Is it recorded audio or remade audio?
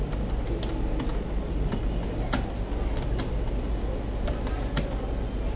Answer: recorded